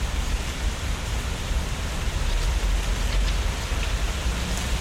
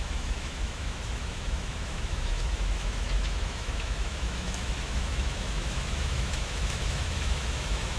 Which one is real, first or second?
first